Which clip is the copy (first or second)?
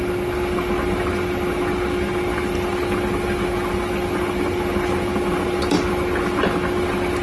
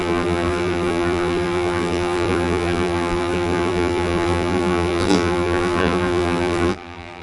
second